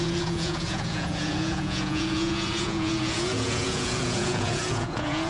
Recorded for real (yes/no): no